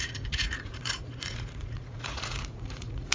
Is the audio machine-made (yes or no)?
yes